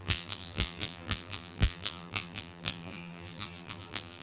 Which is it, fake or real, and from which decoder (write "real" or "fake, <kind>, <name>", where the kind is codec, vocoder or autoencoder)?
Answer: fake, vocoder, BigVGAN v2